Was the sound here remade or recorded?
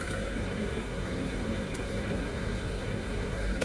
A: remade